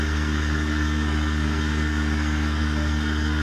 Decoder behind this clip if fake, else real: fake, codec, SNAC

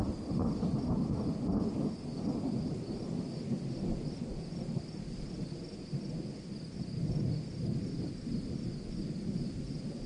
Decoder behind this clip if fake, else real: real